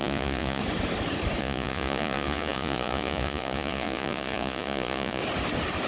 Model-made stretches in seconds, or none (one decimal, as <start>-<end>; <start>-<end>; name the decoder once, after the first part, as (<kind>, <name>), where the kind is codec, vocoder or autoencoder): 0.0-0.6 (vocoder, Vocos); 1.4-5.2